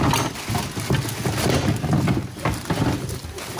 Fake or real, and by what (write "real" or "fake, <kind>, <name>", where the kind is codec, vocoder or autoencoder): real